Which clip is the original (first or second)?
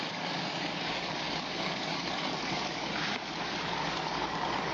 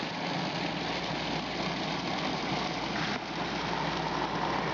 second